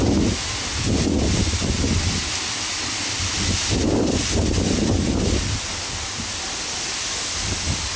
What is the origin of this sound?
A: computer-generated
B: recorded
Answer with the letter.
B